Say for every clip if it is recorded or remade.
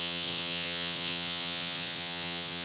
remade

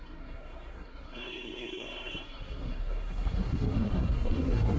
remade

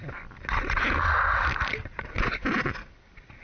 recorded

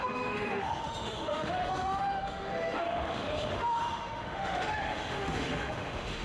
remade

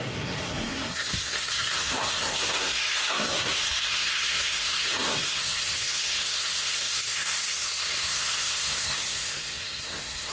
remade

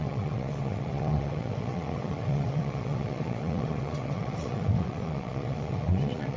remade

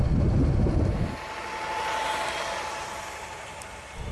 recorded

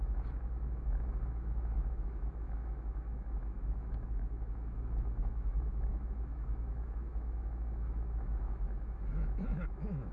remade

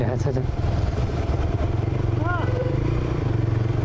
remade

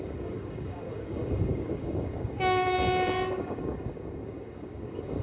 remade